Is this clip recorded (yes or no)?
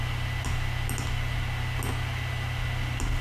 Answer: yes